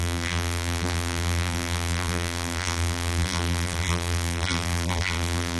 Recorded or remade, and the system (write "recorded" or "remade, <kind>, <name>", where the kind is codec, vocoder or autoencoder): remade, vocoder, BigVGAN v2